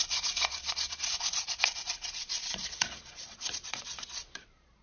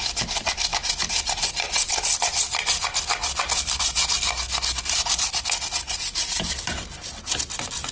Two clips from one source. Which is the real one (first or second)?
second